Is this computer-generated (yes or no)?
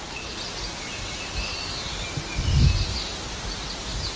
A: no